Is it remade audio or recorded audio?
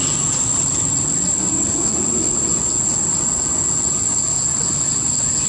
recorded